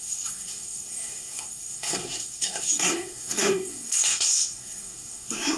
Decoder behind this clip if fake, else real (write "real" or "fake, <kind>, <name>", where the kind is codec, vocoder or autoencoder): fake, codec, SNAC